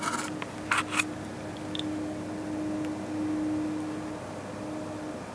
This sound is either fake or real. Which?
real